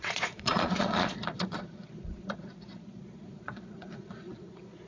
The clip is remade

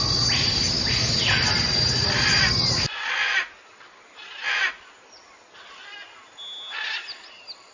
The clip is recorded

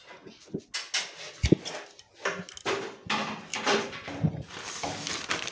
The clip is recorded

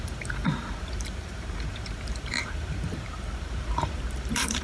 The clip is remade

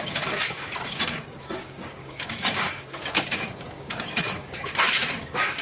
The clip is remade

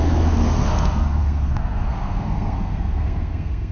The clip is remade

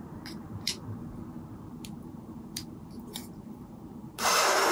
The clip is remade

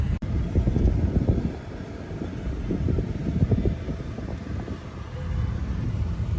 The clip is recorded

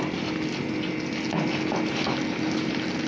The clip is recorded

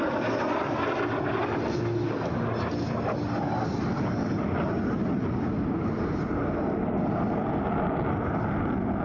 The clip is recorded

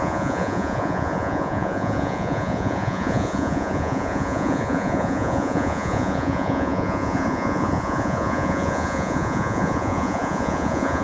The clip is remade